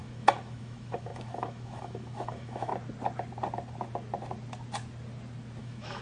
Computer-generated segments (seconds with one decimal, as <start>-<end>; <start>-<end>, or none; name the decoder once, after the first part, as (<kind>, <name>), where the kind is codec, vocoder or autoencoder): 0.0-2.7 (autoencoder, DAC-VAE); 5.6-6.0